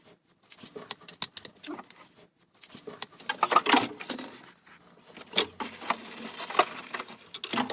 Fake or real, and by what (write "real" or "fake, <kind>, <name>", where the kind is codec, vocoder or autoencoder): real